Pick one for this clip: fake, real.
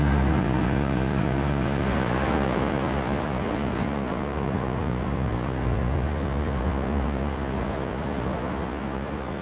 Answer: fake